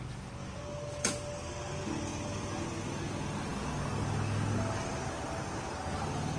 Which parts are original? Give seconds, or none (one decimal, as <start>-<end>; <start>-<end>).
0.0-6.4